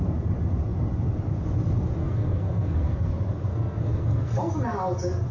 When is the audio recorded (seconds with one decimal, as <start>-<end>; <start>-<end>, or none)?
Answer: 0.0-2.0; 3.1-3.5; 4.5-5.3